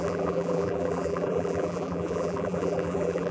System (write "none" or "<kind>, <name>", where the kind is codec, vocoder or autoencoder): vocoder, BigVGAN v2